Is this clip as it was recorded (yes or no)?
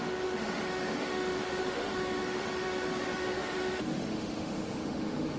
no